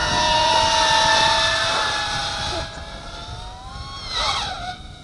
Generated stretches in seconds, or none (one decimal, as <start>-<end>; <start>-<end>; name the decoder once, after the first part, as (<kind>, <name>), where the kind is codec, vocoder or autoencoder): 0.0-0.5 (vocoder, Vocos)